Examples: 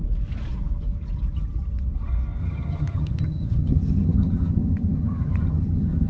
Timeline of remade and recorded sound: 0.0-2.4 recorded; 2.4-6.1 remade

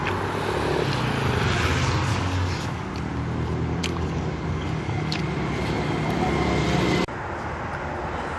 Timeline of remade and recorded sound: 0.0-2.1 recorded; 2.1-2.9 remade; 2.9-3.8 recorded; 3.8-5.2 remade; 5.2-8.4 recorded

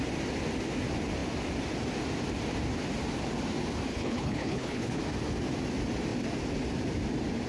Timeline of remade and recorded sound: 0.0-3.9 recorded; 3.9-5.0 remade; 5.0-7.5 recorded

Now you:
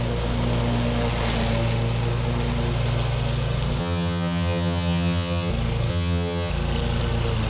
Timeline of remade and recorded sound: 0.0-3.8 recorded; 3.8-5.5 remade; 5.5-5.9 recorded; 5.9-6.5 remade; 6.5-7.5 recorded

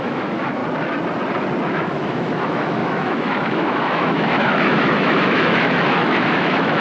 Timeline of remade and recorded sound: 0.0-0.6 remade; 0.6-1.7 recorded; 1.7-6.8 remade

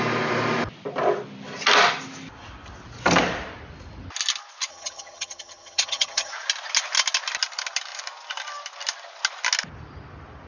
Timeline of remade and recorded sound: 0.0-4.7 recorded; 4.7-6.3 remade; 6.3-10.5 recorded